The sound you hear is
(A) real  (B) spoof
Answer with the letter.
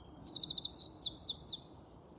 A